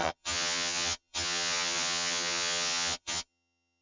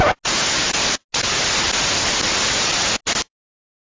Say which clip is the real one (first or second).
second